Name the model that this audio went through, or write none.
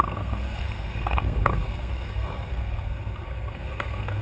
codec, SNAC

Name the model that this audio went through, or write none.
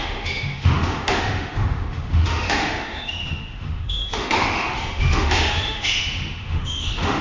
autoencoder, DAC-VAE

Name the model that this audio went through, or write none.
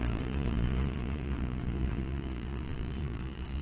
vocoder, Vocos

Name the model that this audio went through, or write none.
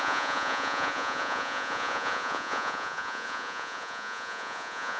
vocoder, Vocos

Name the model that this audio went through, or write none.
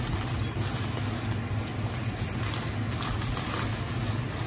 none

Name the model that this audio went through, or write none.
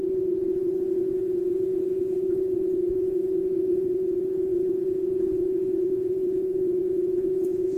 vocoder, Vocos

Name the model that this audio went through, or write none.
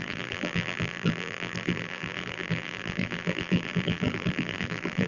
vocoder, BigVGAN v2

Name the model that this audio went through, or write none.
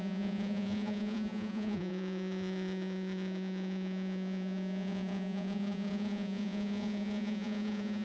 vocoder, Vocos